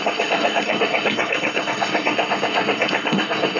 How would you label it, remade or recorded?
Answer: remade